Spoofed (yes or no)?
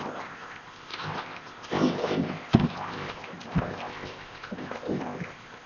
yes